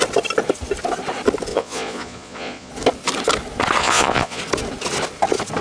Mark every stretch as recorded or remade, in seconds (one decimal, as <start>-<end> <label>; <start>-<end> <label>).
0.0-1.5 recorded; 1.5-2.7 remade; 2.7-3.8 recorded; 3.8-4.4 remade; 4.4-5.6 recorded